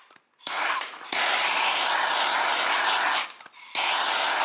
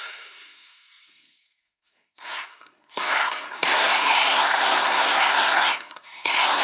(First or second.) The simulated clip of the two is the second